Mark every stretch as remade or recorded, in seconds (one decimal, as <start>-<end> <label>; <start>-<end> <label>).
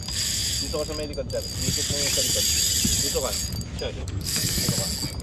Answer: 0.0-4.0 recorded; 4.0-4.6 remade; 4.6-5.2 recorded